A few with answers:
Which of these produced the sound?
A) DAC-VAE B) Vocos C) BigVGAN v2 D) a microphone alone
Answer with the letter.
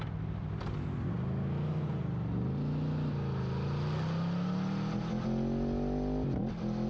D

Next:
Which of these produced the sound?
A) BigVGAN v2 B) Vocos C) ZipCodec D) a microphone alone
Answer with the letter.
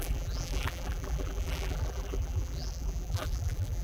A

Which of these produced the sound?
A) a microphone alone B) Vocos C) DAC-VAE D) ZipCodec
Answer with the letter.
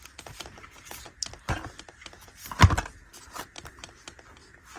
A